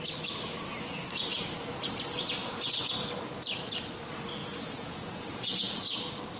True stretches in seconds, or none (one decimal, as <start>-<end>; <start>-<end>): 0.0-2.4; 3.1-4.4; 5.8-6.4